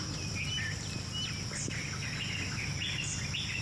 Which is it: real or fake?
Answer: real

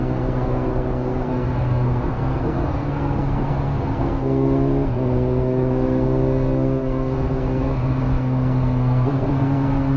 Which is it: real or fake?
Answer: fake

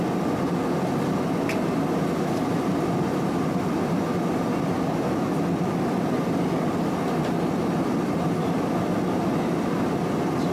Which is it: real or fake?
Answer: real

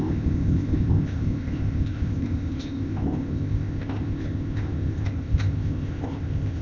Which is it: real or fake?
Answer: fake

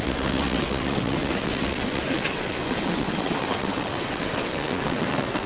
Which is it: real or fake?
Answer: fake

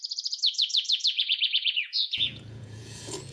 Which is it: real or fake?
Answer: fake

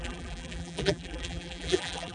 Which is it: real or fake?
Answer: fake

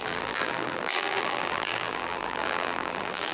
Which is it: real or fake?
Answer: fake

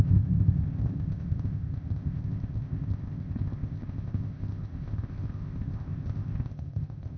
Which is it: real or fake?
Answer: fake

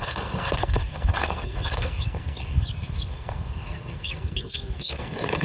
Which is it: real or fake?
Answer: fake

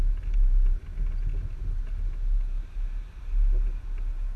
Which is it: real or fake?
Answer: real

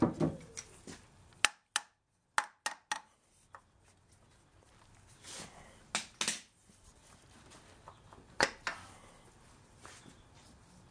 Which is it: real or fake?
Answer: real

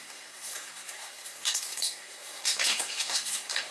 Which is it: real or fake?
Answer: fake